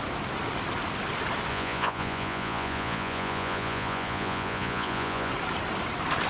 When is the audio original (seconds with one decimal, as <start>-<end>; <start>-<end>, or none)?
0.0-1.5; 5.3-6.3